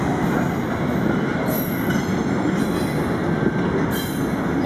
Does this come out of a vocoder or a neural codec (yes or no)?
no